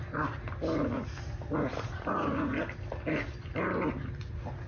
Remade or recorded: recorded